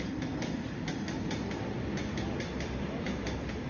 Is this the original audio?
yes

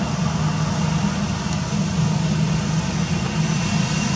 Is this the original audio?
yes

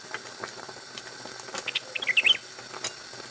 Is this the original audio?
yes